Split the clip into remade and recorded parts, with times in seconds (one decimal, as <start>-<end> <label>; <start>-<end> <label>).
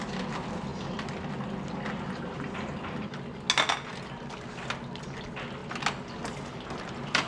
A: 0.0-7.3 recorded